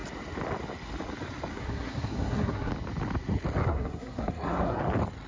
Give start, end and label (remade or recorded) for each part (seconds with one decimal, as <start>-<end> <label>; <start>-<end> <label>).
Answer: 0.0-1.5 recorded; 1.5-2.7 remade; 2.7-3.6 recorded; 3.6-4.8 remade; 4.8-5.3 recorded